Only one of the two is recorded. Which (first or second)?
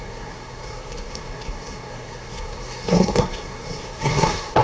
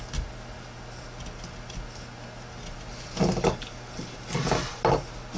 second